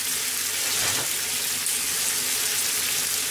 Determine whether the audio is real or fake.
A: real